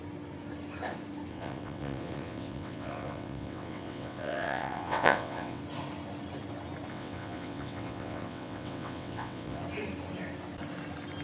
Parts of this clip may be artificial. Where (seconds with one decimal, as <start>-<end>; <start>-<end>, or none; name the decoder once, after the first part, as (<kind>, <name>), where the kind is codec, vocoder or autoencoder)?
1.3-5.6 (vocoder, WaveNeXt); 6.9-9.6

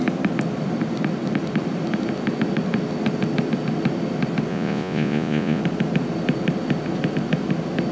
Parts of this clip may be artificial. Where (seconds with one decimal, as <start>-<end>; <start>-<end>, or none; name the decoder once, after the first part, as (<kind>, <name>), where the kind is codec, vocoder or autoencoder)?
4.5-5.6 (vocoder, Vocos)

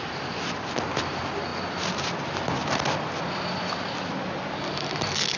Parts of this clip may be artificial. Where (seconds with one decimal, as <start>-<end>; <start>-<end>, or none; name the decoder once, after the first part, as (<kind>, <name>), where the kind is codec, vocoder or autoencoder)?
none

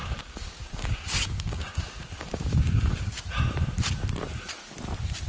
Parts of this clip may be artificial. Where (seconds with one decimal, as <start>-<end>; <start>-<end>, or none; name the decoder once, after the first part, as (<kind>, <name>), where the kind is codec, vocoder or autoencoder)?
0.0-3.2 (codec, DAC)

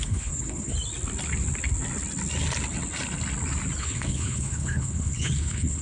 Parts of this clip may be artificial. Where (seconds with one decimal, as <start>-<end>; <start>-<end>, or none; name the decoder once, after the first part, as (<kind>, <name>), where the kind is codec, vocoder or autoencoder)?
0.0-0.7 (codec, HILCodec); 3.8-5.8

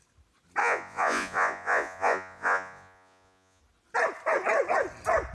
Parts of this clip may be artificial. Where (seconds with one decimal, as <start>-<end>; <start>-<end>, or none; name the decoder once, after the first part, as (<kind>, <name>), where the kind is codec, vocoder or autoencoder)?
0.6-3.6 (vocoder, Vocos)

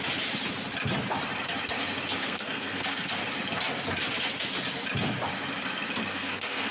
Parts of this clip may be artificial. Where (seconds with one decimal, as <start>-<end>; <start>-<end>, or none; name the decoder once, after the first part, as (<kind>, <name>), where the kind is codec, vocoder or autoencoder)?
2.2-3.2 (codec, SNAC); 6.1-6.7

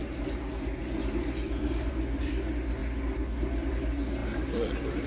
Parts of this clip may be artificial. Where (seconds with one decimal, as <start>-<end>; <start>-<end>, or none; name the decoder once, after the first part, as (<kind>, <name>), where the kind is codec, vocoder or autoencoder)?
none